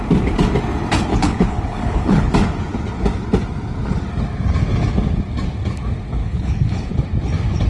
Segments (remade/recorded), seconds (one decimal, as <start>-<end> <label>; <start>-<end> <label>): 0.0-1.1 recorded; 1.1-2.3 remade; 2.3-6.2 recorded; 6.2-6.9 remade; 6.9-7.7 recorded